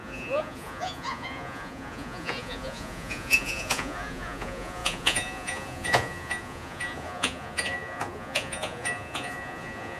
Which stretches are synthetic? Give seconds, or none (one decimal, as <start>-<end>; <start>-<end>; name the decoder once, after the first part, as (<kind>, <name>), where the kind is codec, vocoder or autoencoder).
0.0-10.0 (vocoder, Vocos)